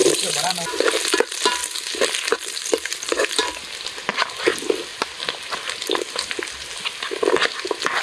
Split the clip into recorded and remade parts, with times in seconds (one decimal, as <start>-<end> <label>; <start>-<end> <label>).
0.0-0.9 remade; 0.9-1.6 recorded; 1.6-3.3 remade; 3.3-8.0 recorded